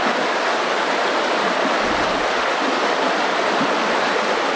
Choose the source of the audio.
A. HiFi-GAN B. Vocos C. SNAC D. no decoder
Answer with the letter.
D